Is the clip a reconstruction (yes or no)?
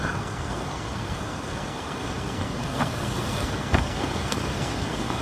yes